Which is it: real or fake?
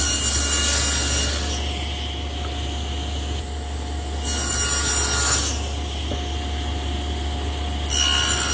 real